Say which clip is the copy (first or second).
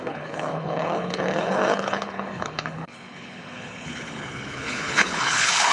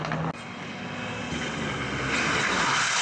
first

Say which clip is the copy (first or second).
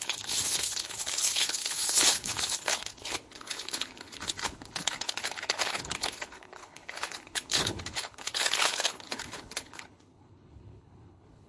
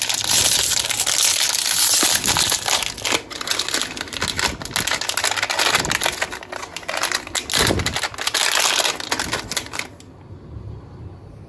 first